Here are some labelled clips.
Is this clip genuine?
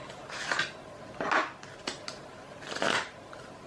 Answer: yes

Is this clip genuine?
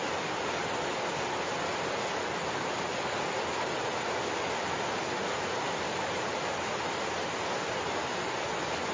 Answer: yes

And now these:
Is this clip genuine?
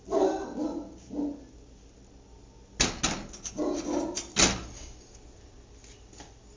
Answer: yes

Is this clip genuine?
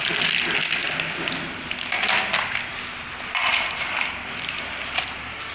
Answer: yes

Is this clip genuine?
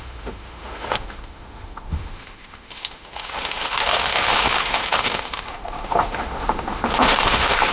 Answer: no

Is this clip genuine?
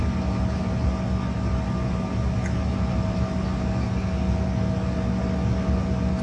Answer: yes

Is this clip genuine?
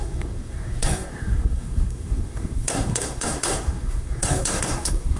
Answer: no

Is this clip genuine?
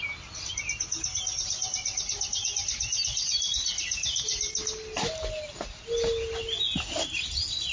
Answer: yes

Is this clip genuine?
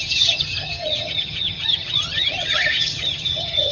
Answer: no